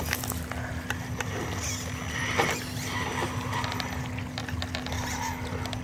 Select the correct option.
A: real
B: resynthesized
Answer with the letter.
A